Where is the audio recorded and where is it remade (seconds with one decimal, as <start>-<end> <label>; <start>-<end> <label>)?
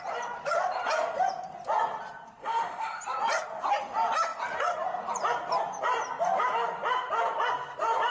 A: 0.0-2.4 recorded; 2.4-3.0 remade; 3.0-8.1 recorded